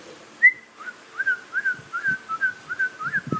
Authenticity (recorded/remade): recorded